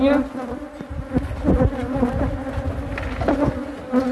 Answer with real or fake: real